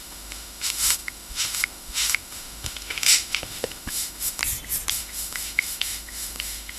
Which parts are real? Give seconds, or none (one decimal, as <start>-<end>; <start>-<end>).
4.4-4.9